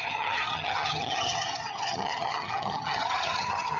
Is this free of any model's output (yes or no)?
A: no